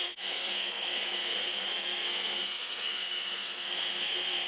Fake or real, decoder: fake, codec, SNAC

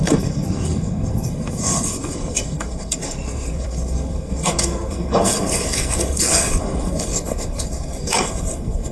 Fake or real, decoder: fake, codec, SNAC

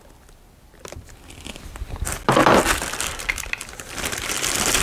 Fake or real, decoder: real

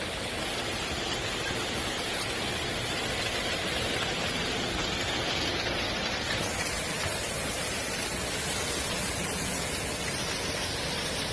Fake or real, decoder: real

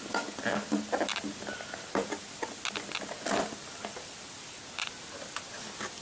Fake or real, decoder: real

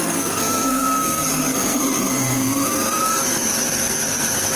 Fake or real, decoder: fake, codec, SNAC